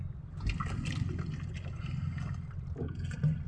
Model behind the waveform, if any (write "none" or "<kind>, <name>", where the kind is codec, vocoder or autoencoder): none